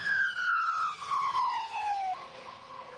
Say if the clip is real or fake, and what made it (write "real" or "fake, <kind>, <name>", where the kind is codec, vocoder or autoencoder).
fake, codec, HILCodec